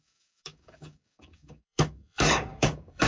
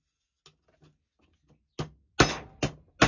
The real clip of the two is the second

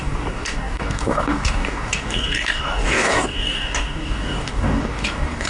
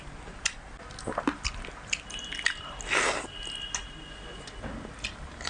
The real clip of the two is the second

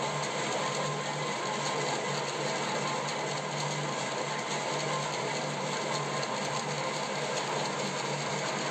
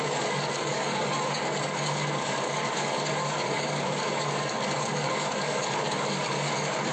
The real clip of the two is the first